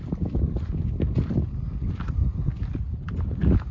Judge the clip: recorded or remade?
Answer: recorded